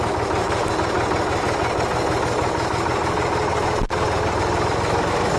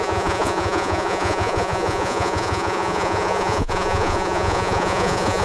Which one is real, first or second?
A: first